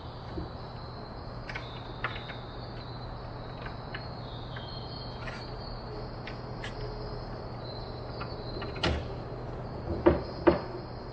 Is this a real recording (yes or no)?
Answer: yes